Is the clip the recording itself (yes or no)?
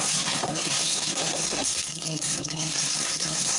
no